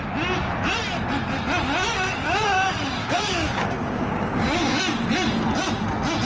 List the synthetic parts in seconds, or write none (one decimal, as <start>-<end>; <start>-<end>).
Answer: 3.0-4.8